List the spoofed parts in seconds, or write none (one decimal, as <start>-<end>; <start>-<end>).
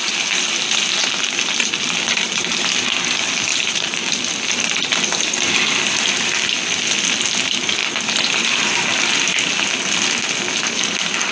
3.5-4.1